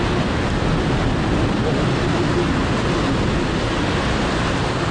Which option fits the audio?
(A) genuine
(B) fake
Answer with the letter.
A